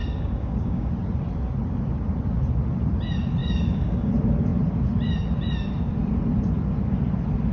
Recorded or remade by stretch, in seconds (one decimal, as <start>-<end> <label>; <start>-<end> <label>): 0.0-0.9 remade; 0.9-3.4 recorded; 3.4-4.1 remade; 4.1-7.5 recorded